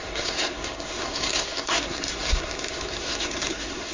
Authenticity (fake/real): fake